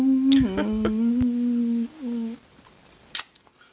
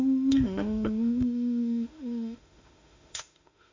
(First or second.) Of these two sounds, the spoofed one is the second